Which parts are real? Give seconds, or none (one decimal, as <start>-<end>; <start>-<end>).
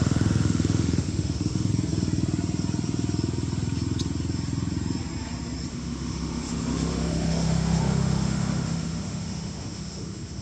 1.7-5.7